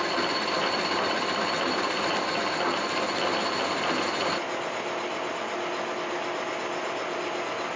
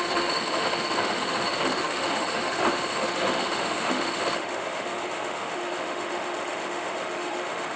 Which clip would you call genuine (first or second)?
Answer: first